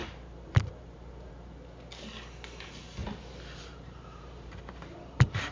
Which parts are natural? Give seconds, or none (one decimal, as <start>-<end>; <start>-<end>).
1.3-3.0